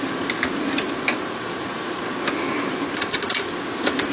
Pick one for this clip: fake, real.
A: real